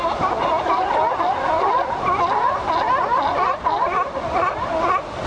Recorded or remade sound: recorded